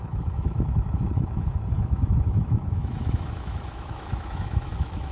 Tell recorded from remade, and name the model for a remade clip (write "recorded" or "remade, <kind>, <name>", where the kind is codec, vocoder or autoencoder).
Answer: remade, autoencoder, DAC-VAE